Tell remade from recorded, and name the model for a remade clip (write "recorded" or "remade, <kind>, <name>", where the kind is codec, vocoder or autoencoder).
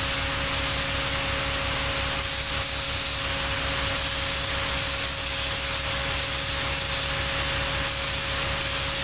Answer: recorded